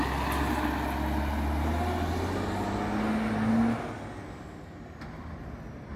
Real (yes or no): yes